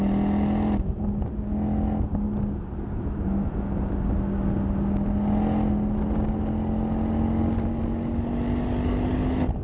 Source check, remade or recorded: recorded